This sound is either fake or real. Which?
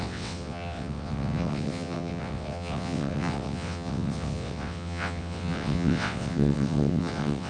fake